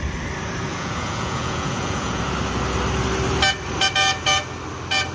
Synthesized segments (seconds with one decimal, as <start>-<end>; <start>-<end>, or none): 0.7-2.2